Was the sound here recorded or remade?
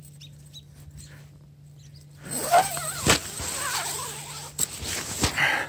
recorded